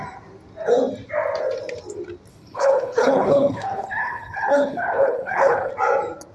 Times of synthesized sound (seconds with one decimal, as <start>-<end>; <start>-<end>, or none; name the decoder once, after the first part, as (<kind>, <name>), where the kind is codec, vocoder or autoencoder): 2.3-5.7 (codec, HILCodec)